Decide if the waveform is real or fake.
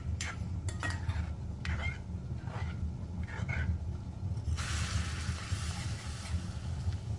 real